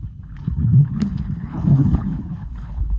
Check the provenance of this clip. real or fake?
fake